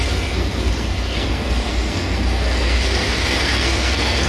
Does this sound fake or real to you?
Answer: fake